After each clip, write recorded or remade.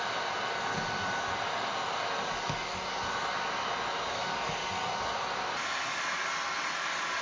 recorded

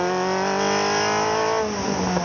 recorded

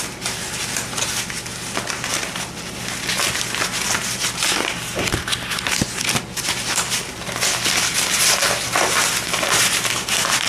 recorded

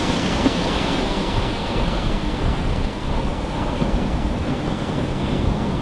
remade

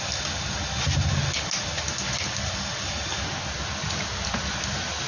recorded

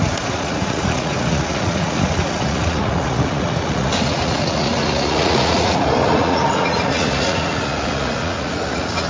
remade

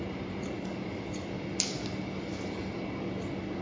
recorded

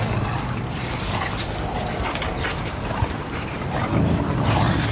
recorded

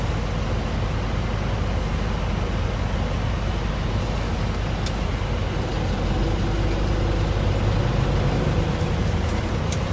recorded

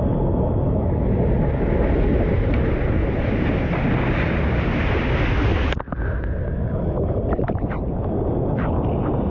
recorded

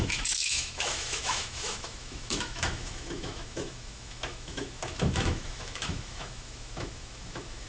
remade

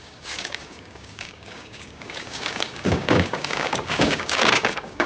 remade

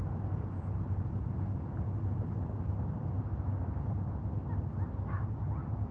recorded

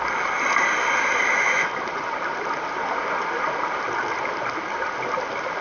recorded